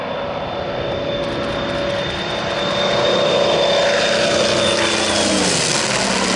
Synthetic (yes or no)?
no